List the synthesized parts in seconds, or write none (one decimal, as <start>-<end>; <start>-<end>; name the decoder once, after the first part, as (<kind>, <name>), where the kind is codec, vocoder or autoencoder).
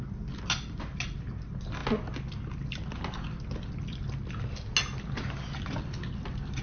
none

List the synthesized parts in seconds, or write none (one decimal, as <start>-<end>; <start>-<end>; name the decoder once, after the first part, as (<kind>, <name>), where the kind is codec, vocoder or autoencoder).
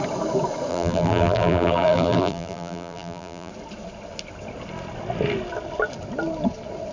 0.7-3.5 (vocoder, BigVGAN v2)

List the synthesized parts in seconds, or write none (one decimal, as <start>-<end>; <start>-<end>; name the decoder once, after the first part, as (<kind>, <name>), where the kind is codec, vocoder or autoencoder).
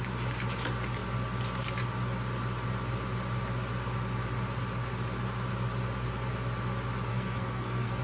7.1-8.0 (codec, SNAC)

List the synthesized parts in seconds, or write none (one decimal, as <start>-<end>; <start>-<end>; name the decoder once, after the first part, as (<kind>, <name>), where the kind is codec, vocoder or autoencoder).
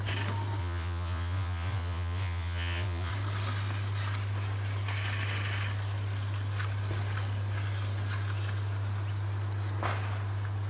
0.6-3.1 (vocoder, Vocos)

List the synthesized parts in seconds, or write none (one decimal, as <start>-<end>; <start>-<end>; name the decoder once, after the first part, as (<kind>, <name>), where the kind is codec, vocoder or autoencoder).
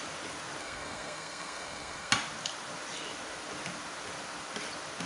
0.6-2.1 (codec, SNAC)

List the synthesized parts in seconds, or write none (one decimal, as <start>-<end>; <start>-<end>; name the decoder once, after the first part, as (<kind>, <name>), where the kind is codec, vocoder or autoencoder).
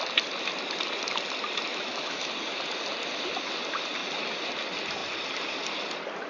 1.7-2.3 (autoencoder, DAC-VAE)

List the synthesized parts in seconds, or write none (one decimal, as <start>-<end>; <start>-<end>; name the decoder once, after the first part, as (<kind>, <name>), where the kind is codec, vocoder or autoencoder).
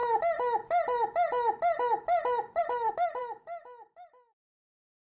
none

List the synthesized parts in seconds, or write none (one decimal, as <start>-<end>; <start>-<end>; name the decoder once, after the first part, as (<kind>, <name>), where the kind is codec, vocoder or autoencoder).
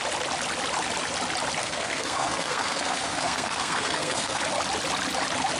1.6-4.4 (codec, SNAC)